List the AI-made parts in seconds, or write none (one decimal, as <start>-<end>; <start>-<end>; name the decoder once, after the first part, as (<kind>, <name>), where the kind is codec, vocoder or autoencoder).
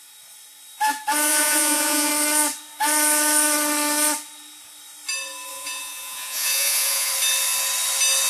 1.3-2.1 (vocoder, Vocos); 5.5-7.1